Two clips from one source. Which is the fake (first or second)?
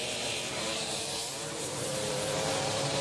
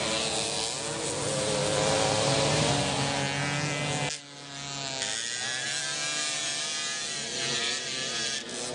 first